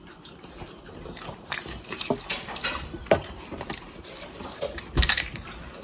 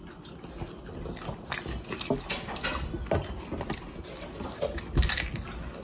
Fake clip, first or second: first